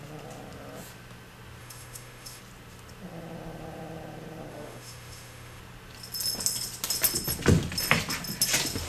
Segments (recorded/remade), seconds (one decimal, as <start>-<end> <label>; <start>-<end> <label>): 0.0-1.6 recorded; 1.6-2.4 remade; 2.4-4.5 recorded; 4.5-5.6 remade; 5.6-8.9 recorded